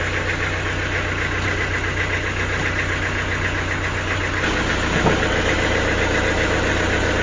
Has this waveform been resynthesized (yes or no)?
no